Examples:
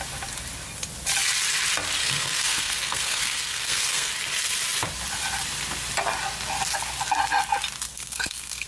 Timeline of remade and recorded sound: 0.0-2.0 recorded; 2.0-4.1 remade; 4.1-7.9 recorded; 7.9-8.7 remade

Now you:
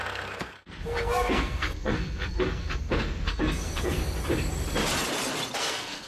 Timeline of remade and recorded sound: 0.0-4.0 remade; 4.0-5.6 recorded; 5.6-6.1 remade

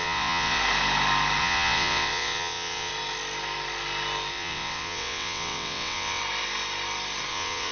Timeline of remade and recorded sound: 0.0-0.6 remade; 0.6-1.4 recorded; 1.4-2.9 remade; 2.9-4.3 recorded; 4.3-6.2 remade; 6.2-7.3 recorded; 7.3-7.7 remade

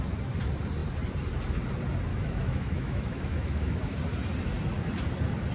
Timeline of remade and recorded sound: 0.0-2.1 recorded; 2.1-4.0 remade; 4.0-5.5 recorded

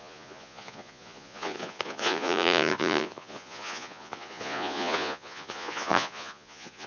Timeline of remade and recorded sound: 0.0-6.9 remade